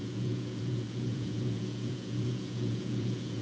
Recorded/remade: remade